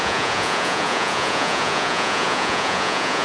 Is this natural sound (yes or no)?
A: no